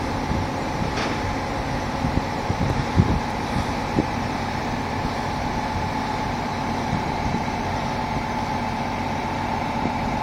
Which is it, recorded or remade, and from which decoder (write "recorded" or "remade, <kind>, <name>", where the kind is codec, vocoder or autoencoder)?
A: remade, vocoder, BigVGAN v2